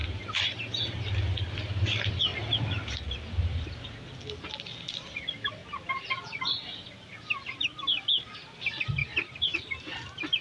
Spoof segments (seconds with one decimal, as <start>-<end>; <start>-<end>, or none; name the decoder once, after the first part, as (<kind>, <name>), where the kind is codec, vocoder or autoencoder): 0.0-1.6 (vocoder, BigVGAN v2); 2.3-3.7; 9.0-9.6